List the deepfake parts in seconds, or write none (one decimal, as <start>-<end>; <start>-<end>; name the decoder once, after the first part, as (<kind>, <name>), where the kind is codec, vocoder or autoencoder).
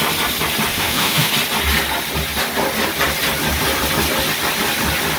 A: 0.7-1.3 (autoencoder, DAC-VAE)